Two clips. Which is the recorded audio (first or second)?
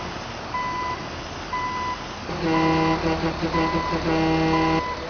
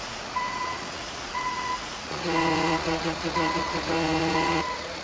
first